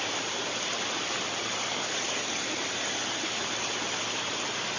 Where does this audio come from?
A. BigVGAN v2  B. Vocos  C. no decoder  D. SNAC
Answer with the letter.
C